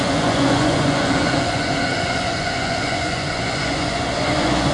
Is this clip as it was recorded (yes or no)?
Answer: no